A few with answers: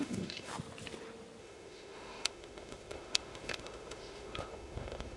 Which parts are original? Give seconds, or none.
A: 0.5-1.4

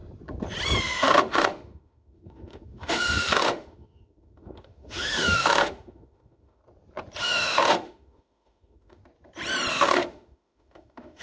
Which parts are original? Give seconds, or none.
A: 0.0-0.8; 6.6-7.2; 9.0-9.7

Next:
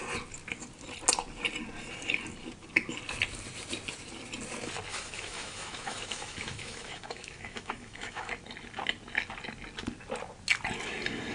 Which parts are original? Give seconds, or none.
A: 0.0-4.9; 8.3-11.3

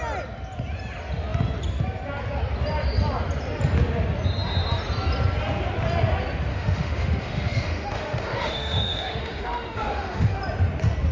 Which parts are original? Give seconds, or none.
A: 0.0-6.5; 10.4-11.1

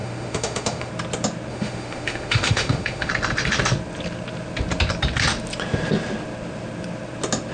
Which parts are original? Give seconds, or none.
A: 0.9-1.5; 3.1-7.5

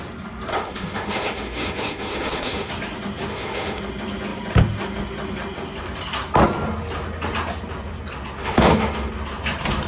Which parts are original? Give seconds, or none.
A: 0.0-0.5; 2.7-3.3; 3.8-8.4; 9.1-9.9

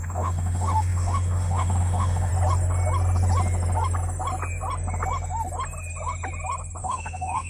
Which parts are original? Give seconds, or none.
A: 2.3-6.8